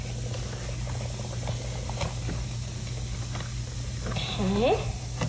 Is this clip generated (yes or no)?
no